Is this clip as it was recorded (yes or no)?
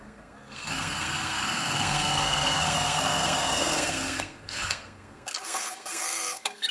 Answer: no